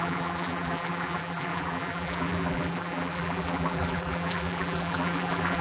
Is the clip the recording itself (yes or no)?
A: no